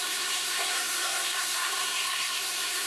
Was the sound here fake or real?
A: fake